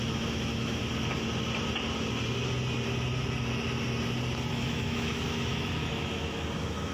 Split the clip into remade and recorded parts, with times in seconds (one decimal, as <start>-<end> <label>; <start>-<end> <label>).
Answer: 0.0-0.8 remade; 0.8-4.5 recorded; 4.5-6.9 remade